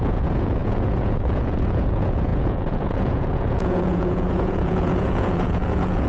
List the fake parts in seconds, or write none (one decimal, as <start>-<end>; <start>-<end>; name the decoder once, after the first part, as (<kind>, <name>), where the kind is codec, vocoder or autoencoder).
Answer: 0.0-6.1 (vocoder, Vocos)